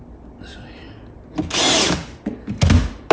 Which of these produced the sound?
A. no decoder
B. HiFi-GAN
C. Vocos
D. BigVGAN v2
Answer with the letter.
A